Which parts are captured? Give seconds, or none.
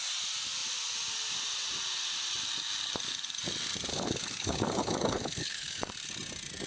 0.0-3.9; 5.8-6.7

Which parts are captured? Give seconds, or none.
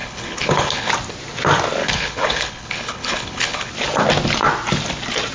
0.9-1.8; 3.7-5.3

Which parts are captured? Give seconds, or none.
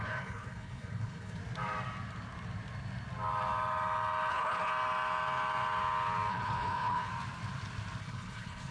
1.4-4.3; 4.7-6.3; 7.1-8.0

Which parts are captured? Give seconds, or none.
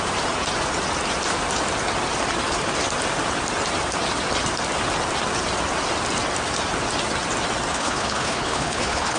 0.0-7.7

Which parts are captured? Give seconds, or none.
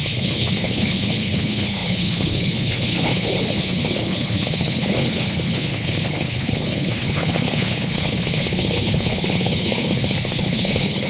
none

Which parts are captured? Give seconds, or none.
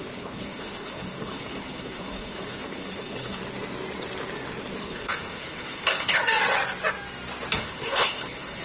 3.4-4.8; 6.2-7.6